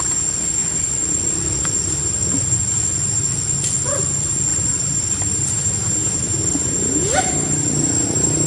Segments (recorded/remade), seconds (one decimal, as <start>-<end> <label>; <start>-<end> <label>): 0.0-4.5 recorded; 4.5-8.5 remade